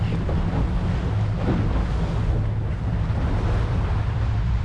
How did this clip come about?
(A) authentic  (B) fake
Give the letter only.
A